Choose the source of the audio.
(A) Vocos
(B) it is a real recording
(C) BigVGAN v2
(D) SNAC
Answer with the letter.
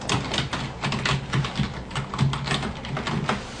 B